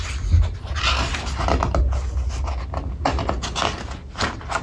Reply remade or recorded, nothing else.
recorded